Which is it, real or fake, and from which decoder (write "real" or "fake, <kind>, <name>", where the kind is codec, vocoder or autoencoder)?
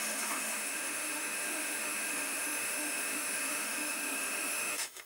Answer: fake, autoencoder, DAC-VAE